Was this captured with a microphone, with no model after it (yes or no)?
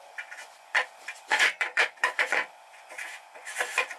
no